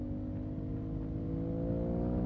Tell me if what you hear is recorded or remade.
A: recorded